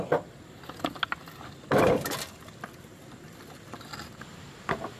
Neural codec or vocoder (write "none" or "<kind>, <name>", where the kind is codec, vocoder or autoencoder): none